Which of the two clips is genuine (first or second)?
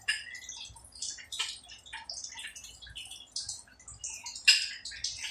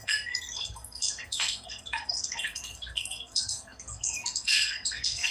first